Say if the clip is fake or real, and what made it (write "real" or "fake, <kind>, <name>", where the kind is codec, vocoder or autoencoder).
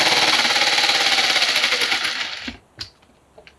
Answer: real